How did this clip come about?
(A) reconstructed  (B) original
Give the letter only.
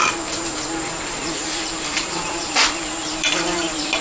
A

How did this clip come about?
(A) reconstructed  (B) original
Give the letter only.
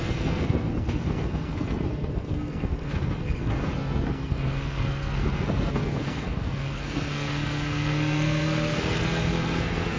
A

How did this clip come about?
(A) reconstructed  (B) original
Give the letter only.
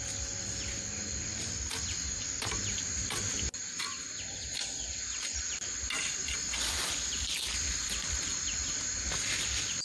B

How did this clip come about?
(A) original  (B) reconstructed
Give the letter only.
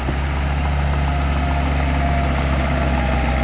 A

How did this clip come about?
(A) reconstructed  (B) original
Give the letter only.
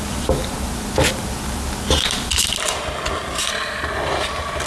B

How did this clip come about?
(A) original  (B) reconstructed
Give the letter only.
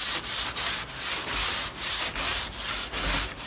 A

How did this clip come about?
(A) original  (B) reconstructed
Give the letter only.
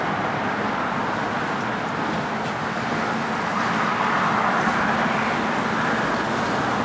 A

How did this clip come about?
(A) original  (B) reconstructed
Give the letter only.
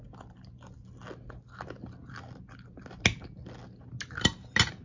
A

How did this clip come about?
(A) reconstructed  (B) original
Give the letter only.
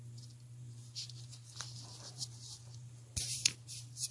A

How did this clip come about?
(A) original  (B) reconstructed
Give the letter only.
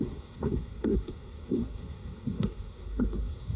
B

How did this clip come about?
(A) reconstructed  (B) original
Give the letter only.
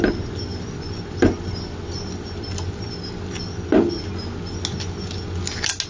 B